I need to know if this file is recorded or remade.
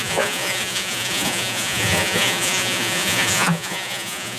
remade